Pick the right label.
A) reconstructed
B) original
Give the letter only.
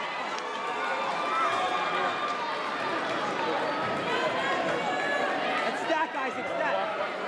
B